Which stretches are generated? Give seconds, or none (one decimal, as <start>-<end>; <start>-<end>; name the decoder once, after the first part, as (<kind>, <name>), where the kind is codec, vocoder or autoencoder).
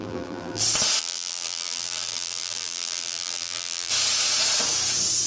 0.0-0.6 (vocoder, BigVGAN v2); 1.0-3.9